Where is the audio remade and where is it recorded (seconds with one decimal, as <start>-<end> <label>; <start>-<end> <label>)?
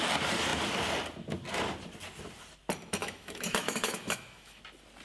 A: 0.0-3.0 recorded; 3.0-4.6 remade; 4.6-5.0 recorded